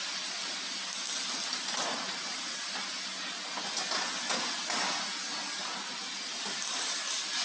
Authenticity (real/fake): real